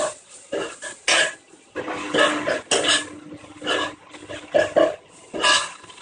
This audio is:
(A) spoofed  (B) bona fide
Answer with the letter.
B